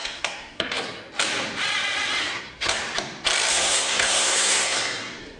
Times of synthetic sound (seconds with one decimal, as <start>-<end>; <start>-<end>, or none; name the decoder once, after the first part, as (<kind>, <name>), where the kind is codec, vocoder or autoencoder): 0.0-1.0 (codec, SNAC); 2.2-2.8; 3.5-5.4